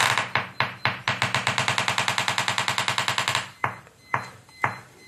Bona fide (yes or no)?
yes